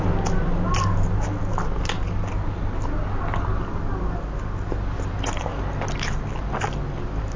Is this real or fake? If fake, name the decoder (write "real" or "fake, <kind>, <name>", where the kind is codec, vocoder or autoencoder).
real